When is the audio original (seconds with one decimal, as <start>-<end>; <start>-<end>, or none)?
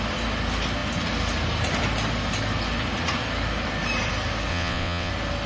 0.0-4.5; 5.1-5.5